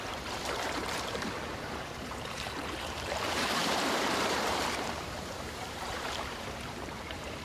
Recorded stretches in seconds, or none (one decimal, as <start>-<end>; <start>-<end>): none